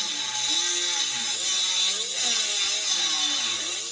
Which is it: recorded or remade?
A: recorded